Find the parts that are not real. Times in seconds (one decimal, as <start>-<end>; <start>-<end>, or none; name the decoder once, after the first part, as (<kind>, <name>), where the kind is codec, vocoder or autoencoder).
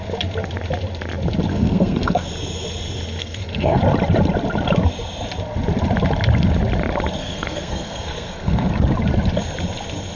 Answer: 1.5-2.3 (codec, SNAC); 3.2-3.8; 7.2-8.7